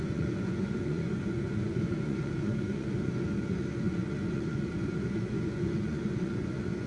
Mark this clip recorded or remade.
remade